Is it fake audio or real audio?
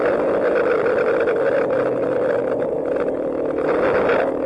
real